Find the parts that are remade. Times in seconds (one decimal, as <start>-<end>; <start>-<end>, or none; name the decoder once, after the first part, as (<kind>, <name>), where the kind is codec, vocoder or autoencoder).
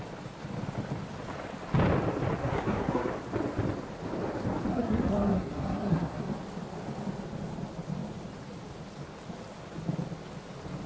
2.4-3.1 (codec, SNAC); 4.7-6.2